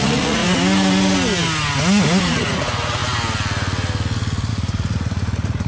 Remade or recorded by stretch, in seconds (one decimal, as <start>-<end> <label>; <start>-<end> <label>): 0.0-0.4 remade; 0.4-2.2 recorded; 2.2-3.0 remade; 3.0-4.5 recorded; 4.5-5.7 remade